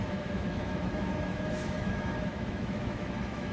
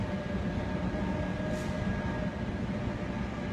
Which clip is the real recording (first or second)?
second